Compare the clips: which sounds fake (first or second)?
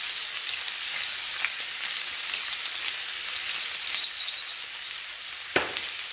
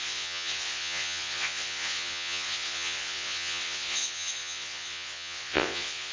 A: second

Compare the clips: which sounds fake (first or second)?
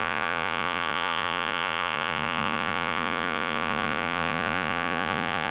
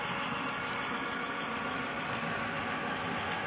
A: first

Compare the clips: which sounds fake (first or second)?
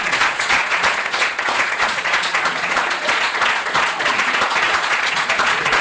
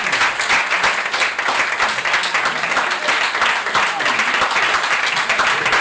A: first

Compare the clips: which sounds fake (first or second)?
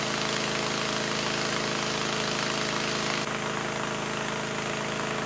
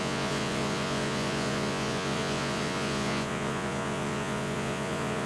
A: second